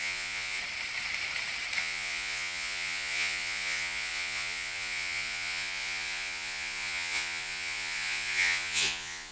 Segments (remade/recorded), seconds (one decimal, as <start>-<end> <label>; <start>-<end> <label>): 0.0-0.6 remade; 0.6-1.8 recorded; 1.8-9.3 remade